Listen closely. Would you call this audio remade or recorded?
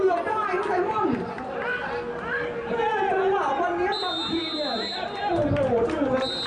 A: recorded